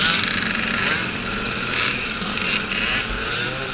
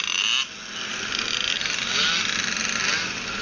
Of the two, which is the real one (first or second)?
second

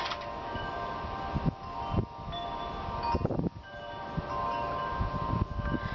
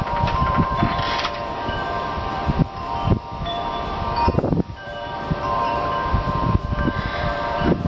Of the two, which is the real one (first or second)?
first